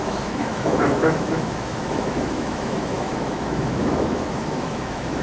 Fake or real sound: fake